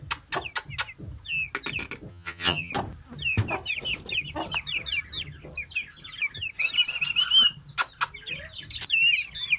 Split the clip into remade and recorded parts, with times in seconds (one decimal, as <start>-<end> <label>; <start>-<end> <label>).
0.0-2.1 recorded; 2.1-2.7 remade; 2.7-9.6 recorded